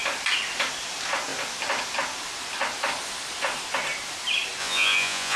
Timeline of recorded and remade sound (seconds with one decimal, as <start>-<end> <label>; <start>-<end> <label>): 0.0-4.6 recorded; 4.6-5.4 remade